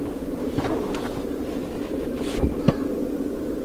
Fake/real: real